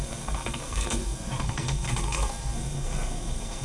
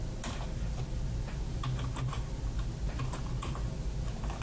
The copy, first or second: first